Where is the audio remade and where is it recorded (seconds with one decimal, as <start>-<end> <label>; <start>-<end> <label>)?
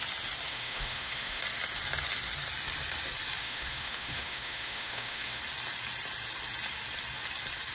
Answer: 0.0-0.5 recorded; 0.5-1.4 remade; 1.4-3.4 recorded; 3.4-5.4 remade; 5.4-7.7 recorded